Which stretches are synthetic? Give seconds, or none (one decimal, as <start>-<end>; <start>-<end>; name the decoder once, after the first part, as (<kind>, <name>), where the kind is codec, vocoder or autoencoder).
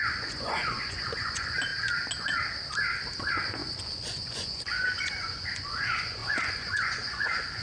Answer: 0.0-1.7 (vocoder, Vocos); 3.2-7.6